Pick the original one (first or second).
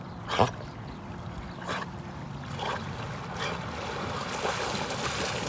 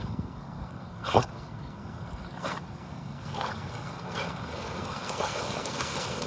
first